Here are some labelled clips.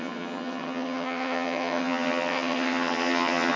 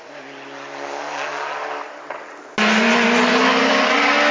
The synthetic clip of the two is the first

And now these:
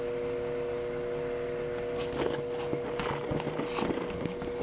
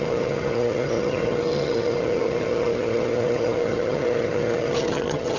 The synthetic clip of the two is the second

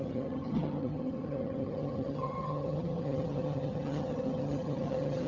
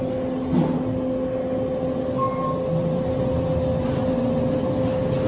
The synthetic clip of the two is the first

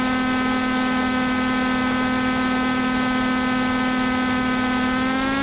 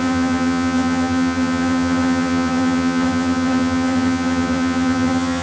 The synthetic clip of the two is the second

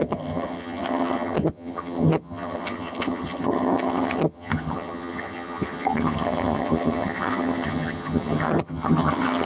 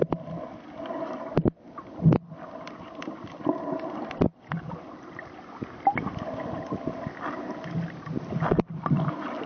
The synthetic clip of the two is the first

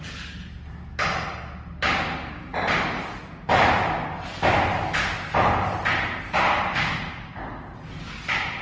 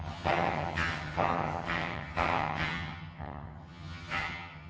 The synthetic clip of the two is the second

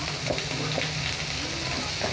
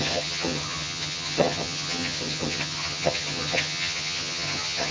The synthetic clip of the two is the second